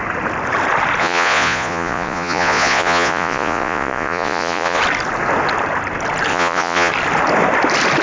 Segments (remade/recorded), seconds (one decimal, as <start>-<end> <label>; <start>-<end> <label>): 0.0-1.0 recorded; 1.0-4.8 remade; 4.8-6.3 recorded; 6.3-6.9 remade; 6.9-8.0 recorded